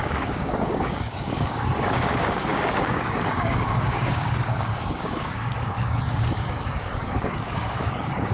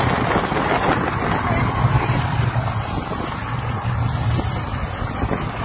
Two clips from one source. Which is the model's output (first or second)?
first